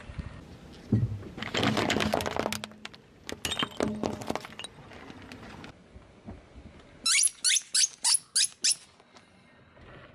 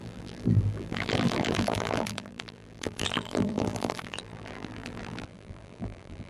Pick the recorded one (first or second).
first